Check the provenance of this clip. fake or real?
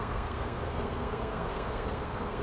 fake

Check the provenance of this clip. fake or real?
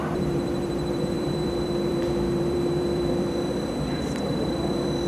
fake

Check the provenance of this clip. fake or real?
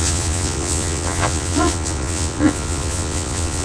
fake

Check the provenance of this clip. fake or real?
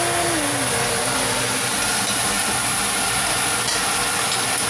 real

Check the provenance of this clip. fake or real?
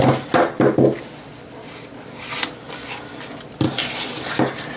real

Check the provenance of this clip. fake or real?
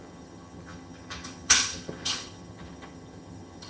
fake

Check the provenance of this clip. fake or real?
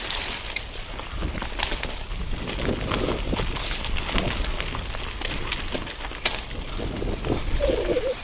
real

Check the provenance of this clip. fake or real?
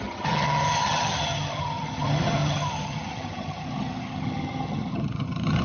fake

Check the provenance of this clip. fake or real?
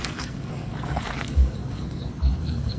fake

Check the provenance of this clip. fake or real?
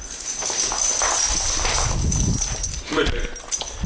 real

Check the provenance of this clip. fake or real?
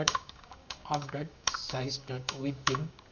fake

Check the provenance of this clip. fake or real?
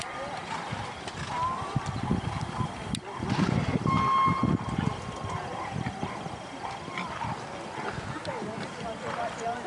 real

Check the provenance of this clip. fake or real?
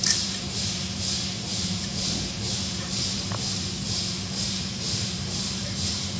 fake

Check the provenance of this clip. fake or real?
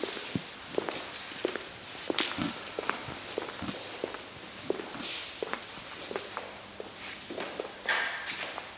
real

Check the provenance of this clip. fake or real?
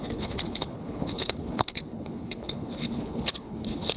fake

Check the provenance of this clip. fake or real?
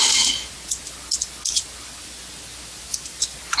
real